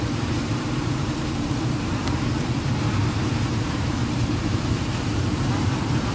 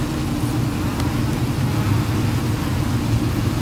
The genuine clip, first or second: second